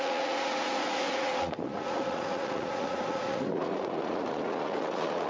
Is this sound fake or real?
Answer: fake